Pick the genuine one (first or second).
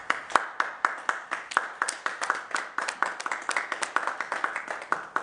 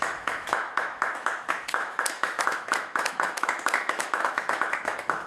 first